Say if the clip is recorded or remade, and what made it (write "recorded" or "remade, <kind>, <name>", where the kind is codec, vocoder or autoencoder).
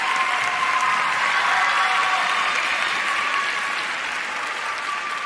recorded